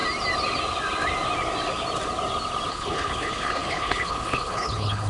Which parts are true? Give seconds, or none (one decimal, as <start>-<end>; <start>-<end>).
0.0-2.7